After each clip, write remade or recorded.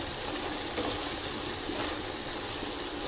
recorded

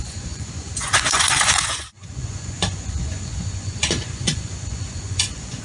remade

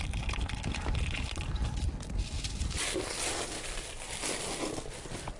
recorded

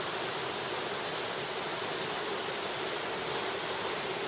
recorded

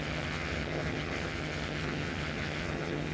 remade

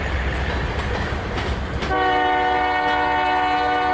recorded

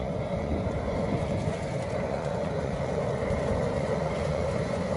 remade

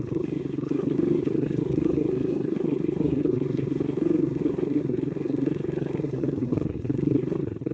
remade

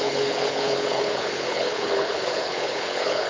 remade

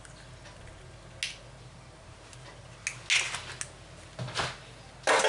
recorded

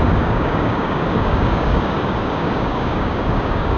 remade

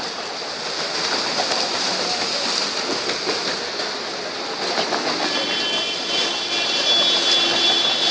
recorded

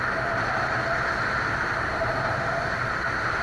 recorded